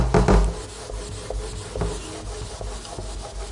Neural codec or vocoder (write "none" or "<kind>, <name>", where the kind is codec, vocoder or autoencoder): none